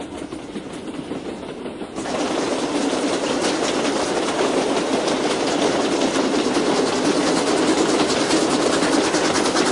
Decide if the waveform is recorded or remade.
recorded